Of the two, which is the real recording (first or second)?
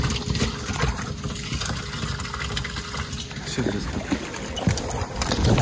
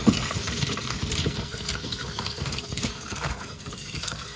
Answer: first